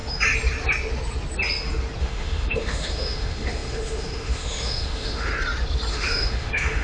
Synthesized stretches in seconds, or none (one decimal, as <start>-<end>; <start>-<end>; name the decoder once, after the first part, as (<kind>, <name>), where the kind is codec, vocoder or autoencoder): 2.0-5.3 (autoencoder, DAC-VAE); 5.9-6.8